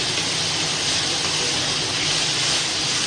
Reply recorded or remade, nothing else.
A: recorded